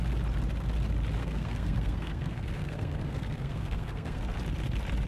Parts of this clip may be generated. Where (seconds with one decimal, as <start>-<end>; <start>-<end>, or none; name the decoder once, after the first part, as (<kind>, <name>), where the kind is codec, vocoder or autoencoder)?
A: 1.2-4.2 (codec, SNAC)